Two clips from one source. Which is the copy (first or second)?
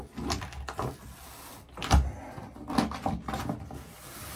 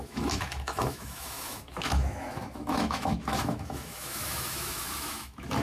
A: second